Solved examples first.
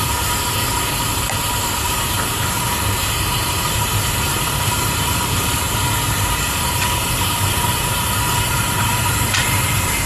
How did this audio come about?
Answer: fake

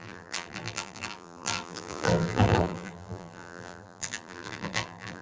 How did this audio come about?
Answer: fake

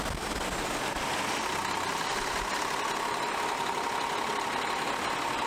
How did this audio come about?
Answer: real